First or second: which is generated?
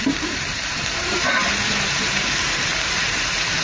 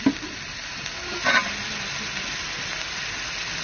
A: first